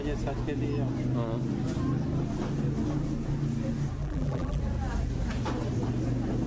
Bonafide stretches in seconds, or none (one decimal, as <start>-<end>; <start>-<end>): 0.0-4.0; 4.6-6.5